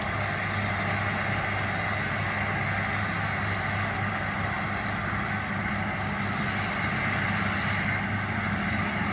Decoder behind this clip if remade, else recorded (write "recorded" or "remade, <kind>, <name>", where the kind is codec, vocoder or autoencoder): recorded